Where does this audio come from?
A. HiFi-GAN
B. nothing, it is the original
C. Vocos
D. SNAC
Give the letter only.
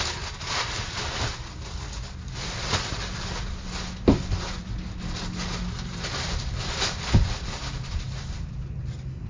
B